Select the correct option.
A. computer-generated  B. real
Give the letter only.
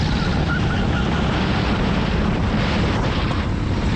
B